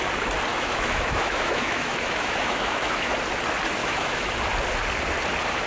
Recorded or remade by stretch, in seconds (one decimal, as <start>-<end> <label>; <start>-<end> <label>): 0.0-0.5 recorded; 0.5-3.1 remade; 3.1-3.8 recorded; 3.8-4.3 remade; 4.3-5.7 recorded